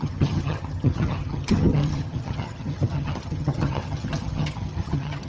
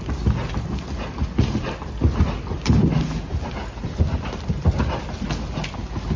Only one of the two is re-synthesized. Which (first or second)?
first